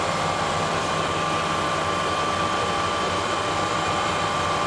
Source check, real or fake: fake